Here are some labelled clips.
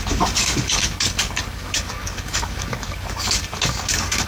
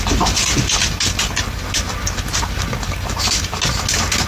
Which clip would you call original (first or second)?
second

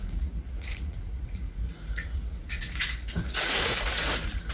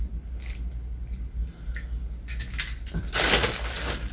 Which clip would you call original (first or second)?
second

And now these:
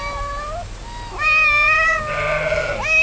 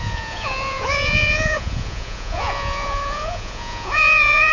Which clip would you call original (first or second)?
first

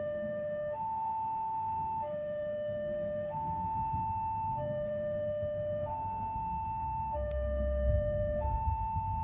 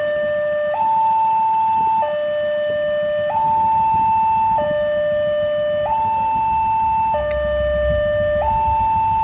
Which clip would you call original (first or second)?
second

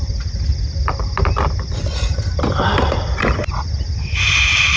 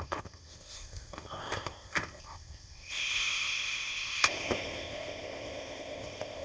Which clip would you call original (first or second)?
first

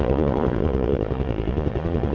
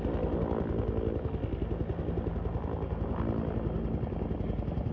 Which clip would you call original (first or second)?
second